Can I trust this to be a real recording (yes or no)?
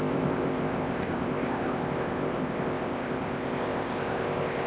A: no